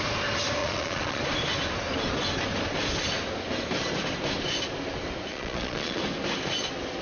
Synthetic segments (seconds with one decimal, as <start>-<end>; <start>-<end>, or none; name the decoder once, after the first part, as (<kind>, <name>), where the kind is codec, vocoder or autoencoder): 0.6-1.2 (vocoder, Vocos); 5.3-6.0